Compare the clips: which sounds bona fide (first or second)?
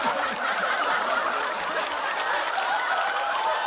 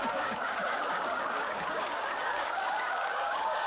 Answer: first